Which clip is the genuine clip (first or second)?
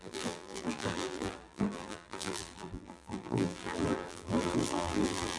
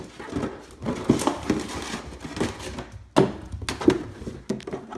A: second